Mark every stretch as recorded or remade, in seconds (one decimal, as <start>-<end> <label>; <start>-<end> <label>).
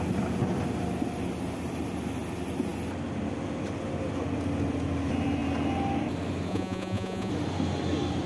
0.0-6.5 recorded; 6.5-7.3 remade; 7.3-8.3 recorded